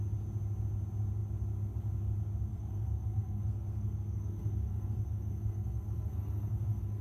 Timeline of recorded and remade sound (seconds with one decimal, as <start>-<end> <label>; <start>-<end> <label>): 0.0-2.5 recorded; 2.5-7.0 remade